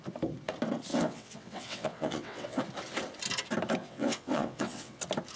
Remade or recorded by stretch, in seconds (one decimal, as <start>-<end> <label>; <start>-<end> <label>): 0.0-0.9 recorded; 0.9-2.6 remade; 2.6-3.8 recorded; 3.8-5.0 remade; 5.0-5.4 recorded